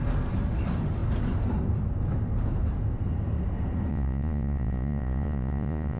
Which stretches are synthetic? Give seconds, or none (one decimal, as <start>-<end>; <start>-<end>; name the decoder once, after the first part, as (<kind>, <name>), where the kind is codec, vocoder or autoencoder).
3.9-6.0 (vocoder, Vocos)